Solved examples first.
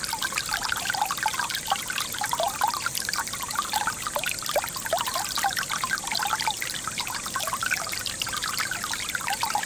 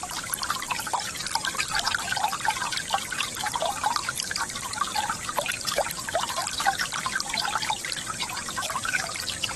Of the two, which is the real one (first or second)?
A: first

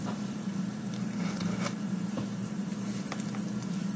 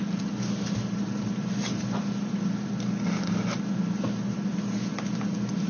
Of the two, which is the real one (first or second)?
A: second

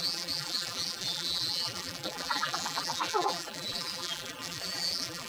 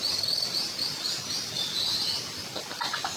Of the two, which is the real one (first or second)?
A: second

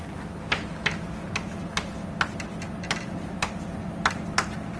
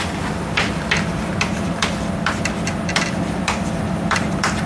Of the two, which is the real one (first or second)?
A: first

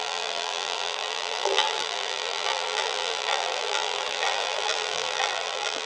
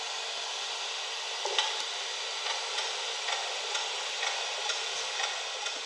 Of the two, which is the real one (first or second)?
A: second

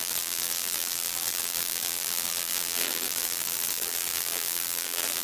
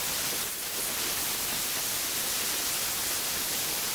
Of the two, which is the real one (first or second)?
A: second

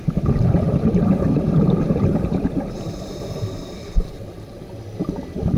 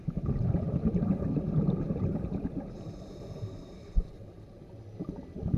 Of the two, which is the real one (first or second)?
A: second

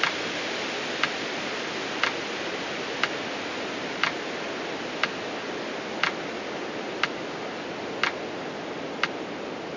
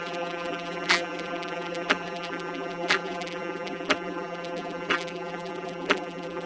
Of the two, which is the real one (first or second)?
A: first